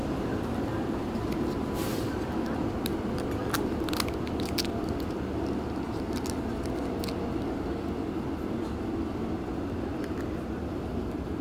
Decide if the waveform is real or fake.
real